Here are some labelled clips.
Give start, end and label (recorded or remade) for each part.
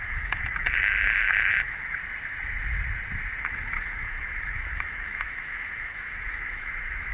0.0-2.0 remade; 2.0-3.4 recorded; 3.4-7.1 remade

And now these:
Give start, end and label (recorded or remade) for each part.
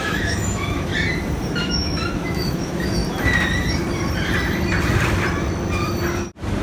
0.0-0.9 remade; 0.9-1.6 recorded; 1.6-3.0 remade; 3.0-6.6 recorded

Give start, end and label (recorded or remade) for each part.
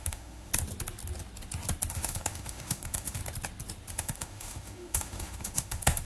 0.0-0.5 remade; 0.5-1.9 recorded; 1.9-3.2 remade; 3.2-3.9 recorded; 3.9-6.0 remade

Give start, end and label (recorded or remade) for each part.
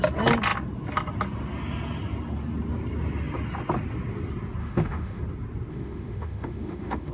0.0-4.6 recorded; 4.6-5.2 remade; 5.2-5.7 recorded; 5.7-7.1 remade